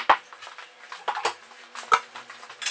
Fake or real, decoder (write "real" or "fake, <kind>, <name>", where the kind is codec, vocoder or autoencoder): real